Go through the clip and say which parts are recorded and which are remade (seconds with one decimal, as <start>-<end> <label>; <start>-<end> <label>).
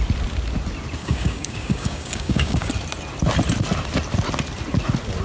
0.0-1.0 recorded; 1.0-2.7 remade; 2.7-5.2 recorded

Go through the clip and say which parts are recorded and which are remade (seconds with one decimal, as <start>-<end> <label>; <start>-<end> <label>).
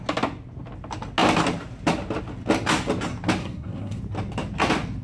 0.0-3.4 recorded; 3.4-4.0 remade; 4.0-5.0 recorded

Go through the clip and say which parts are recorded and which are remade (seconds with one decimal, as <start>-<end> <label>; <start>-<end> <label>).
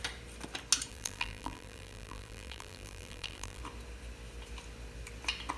0.0-0.9 recorded; 0.9-3.6 remade; 3.6-5.6 recorded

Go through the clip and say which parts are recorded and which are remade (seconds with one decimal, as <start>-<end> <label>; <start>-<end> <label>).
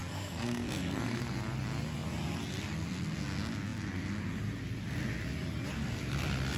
0.0-1.2 remade; 1.2-6.6 recorded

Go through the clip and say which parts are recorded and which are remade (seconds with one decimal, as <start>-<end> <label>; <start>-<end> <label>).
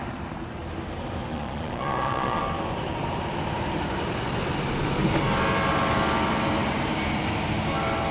0.0-1.3 recorded; 1.3-2.4 remade; 2.4-8.1 recorded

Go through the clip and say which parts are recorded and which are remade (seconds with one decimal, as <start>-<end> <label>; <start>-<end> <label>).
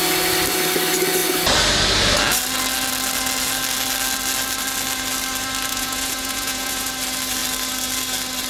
0.0-5.7 recorded; 5.7-6.9 remade; 6.9-8.5 recorded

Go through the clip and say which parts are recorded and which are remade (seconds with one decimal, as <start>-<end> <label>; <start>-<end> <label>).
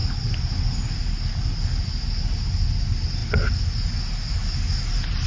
0.0-5.3 recorded